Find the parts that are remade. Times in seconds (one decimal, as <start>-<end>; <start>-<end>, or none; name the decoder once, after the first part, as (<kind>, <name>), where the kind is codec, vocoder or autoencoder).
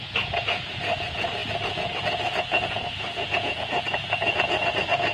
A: 0.0-5.1 (vocoder, Vocos)